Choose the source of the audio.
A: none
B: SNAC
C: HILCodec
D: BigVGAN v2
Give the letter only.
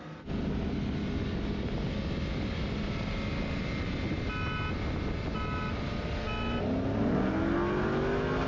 A